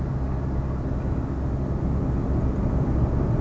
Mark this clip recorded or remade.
recorded